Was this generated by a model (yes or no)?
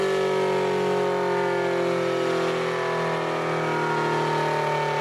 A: no